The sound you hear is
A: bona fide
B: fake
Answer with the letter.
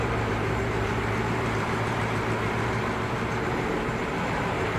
B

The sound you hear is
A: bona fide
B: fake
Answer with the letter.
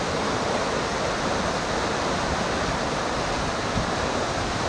B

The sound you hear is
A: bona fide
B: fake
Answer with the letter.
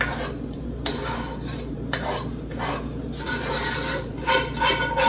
B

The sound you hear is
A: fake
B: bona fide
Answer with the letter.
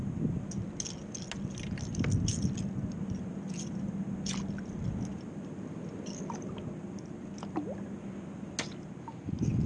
B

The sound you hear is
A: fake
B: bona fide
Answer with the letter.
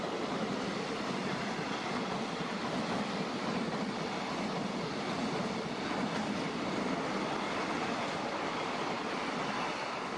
A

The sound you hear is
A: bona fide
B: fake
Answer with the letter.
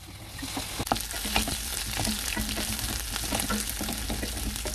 A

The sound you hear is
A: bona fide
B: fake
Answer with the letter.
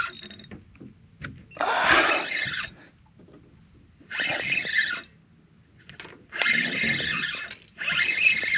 A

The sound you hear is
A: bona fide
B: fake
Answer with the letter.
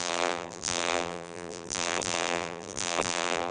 B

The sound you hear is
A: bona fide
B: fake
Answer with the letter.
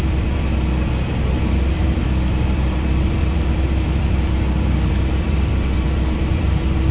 B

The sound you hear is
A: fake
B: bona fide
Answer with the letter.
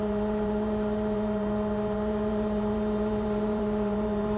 A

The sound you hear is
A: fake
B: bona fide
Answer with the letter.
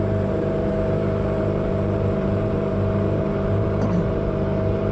A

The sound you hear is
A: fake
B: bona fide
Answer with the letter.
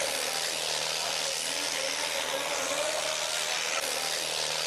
B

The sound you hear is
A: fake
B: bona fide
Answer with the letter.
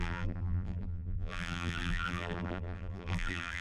A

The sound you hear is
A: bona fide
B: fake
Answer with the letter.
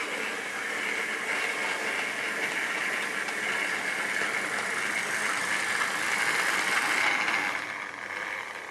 A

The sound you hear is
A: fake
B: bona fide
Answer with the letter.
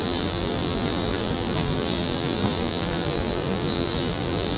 A